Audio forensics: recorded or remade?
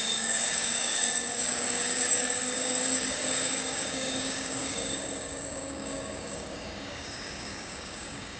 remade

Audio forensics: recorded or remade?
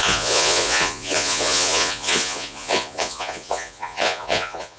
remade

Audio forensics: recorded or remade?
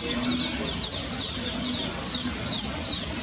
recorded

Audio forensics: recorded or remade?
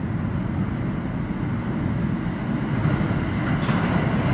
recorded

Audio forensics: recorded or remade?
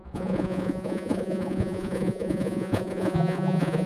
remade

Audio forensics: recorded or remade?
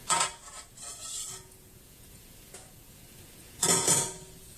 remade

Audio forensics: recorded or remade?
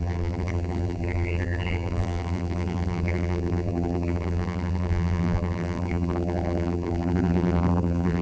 remade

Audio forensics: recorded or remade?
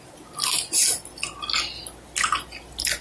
recorded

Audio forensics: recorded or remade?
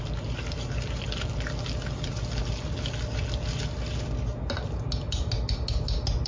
recorded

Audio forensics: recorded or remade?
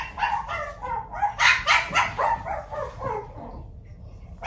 recorded